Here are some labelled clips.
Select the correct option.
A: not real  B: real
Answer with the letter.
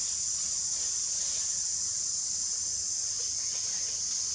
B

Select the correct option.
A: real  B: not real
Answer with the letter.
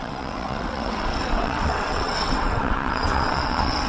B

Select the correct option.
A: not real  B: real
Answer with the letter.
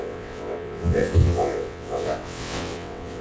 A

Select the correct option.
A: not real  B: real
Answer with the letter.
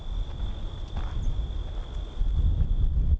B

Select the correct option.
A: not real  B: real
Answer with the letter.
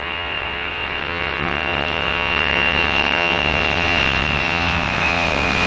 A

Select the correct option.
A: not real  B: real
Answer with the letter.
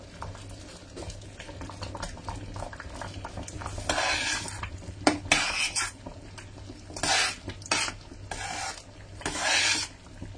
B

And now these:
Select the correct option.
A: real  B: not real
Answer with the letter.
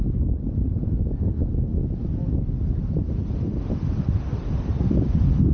A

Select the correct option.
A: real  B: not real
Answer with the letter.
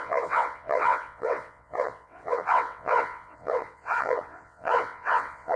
B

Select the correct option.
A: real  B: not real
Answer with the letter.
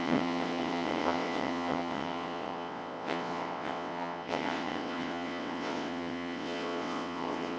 B